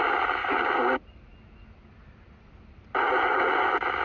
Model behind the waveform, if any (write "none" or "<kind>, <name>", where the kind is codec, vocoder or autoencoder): none